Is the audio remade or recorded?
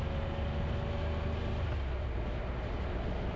recorded